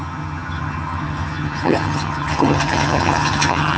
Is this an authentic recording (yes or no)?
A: no